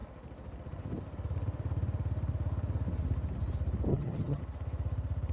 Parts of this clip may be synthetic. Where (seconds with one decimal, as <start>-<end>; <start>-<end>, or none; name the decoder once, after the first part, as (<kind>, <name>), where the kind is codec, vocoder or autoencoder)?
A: 3.9-4.4 (vocoder, HiFi-GAN)